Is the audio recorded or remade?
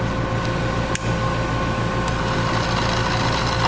recorded